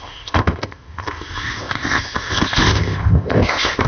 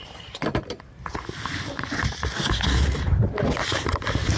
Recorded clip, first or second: second